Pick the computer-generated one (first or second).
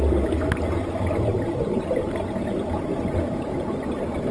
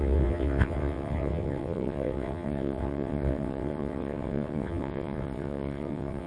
second